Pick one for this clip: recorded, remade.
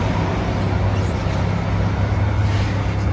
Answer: recorded